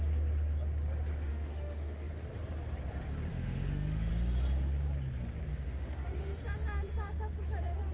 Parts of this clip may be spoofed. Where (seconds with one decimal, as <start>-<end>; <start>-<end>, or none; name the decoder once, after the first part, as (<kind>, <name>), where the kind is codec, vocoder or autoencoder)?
1.3-2.1 (autoencoder, DAC-VAE); 3.3-4.1; 5.5-6.4